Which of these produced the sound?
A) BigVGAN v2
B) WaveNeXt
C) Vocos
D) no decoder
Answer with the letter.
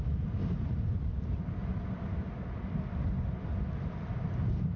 D